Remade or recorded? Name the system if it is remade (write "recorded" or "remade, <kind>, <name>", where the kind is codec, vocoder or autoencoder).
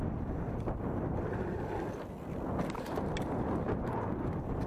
recorded